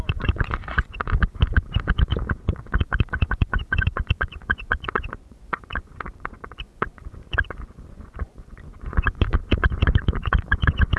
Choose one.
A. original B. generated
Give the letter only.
B